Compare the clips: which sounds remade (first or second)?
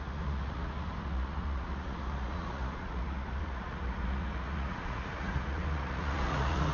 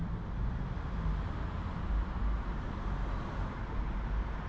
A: first